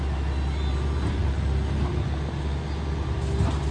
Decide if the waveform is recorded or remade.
recorded